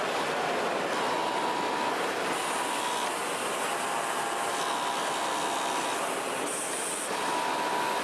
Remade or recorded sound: recorded